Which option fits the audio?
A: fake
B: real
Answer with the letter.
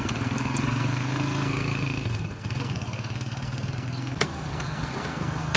A